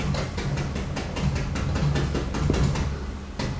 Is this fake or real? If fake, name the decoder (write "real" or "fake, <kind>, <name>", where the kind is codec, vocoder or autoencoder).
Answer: real